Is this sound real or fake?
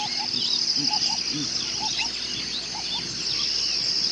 real